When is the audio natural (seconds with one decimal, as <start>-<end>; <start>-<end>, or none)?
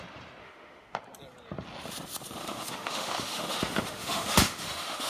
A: 0.0-0.4; 1.0-2.4